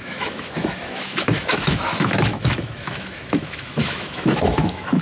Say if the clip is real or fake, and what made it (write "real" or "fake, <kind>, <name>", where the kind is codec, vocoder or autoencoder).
fake, autoencoder, DAC-VAE